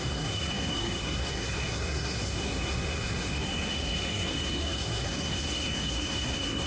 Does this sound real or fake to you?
fake